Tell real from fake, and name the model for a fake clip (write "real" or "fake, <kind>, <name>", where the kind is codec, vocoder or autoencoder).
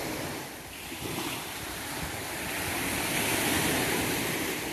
fake, vocoder, BigVGAN v2